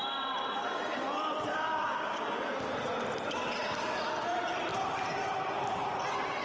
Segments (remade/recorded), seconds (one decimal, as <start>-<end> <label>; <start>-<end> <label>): 0.0-1.5 recorded; 1.5-2.4 remade; 2.4-6.4 recorded

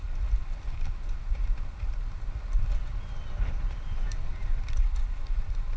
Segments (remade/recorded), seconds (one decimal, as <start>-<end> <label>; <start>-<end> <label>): 0.0-0.4 remade; 0.4-3.3 recorded; 3.3-5.8 remade